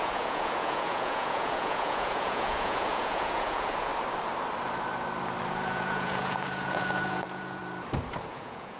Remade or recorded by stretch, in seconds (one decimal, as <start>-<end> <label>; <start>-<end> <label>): 0.0-3.9 remade; 3.9-5.5 recorded; 5.5-7.6 remade; 7.6-8.3 recorded; 8.3-8.8 remade